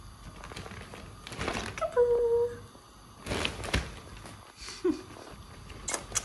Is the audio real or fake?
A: real